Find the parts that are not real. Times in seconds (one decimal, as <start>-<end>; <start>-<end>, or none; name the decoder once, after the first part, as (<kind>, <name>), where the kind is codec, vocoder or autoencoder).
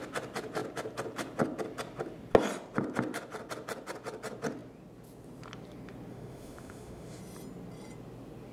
6.1-7.2 (autoencoder, DAC-VAE)